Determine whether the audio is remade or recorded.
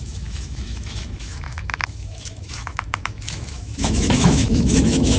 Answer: remade